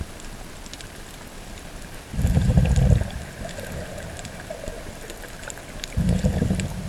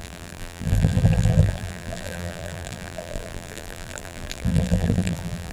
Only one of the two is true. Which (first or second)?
first